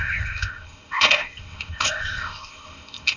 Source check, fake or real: fake